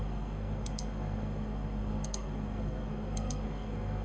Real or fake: fake